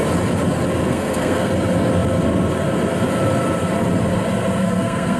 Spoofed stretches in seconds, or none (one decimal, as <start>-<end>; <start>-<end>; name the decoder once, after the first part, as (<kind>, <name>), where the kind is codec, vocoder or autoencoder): 0.8-1.5 (codec, SNAC); 4.6-5.2